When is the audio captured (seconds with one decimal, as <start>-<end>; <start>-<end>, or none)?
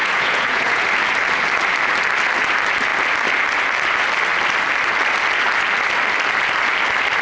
0.8-7.2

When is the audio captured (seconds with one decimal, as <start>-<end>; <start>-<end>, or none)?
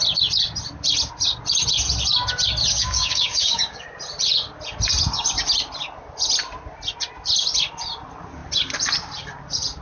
0.0-2.7; 3.8-9.8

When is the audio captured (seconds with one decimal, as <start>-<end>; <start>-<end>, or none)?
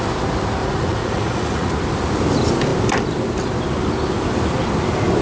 0.0-0.6; 1.7-5.2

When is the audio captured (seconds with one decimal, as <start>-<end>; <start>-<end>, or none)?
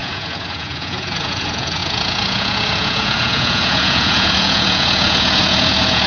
none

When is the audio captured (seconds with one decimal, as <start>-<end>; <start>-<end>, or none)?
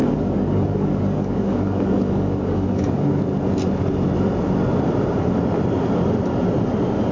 3.2-7.1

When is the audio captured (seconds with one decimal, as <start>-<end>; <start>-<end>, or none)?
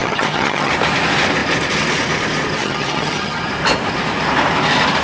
0.7-2.6; 3.4-5.0